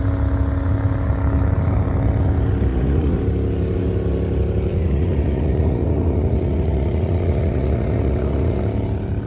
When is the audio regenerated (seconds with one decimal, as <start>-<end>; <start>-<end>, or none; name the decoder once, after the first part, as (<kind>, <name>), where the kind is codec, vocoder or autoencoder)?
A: 2.7-3.2 (vocoder, Vocos); 4.7-8.6